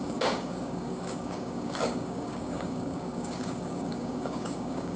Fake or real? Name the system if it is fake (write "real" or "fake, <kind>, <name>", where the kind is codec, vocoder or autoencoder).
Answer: fake, codec, DAC